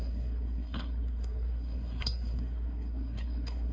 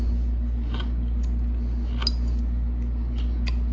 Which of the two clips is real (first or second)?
second